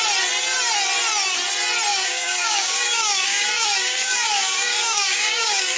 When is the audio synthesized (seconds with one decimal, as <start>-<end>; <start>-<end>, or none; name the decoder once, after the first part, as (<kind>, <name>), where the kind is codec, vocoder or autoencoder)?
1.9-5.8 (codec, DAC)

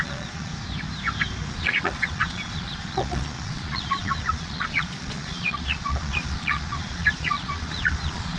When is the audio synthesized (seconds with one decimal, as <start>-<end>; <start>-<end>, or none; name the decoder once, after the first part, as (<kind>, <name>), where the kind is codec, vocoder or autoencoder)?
0.0-0.5 (vocoder, Vocos); 1.5-8.4

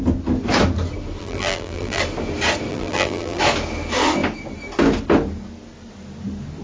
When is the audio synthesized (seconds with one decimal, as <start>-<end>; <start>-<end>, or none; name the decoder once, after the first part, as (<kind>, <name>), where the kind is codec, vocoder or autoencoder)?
1.2-2.0 (vocoder, BigVGAN v2); 2.7-3.4

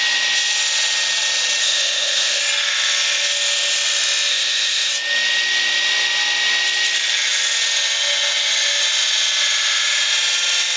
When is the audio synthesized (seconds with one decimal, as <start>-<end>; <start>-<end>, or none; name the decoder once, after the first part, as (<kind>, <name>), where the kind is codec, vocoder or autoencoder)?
1.6-2.4 (codec, ZipCodec); 4.3-4.9

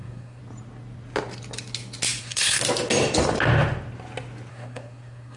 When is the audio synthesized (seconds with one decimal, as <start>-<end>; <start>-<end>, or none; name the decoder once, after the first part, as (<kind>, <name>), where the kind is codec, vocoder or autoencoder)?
0.0-0.4 (codec, SNAC); 2.2-2.6; 4.5-5.4

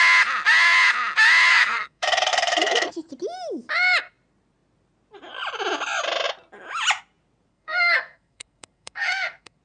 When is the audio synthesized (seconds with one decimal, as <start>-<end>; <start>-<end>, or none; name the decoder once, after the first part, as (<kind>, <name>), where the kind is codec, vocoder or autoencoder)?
1.5-3.1 (codec, SNAC); 7.5-9.6

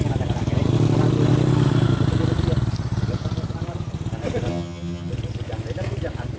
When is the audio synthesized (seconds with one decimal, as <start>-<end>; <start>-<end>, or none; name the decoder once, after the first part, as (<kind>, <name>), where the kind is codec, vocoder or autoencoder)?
4.5-5.1 (vocoder, HiFi-GAN)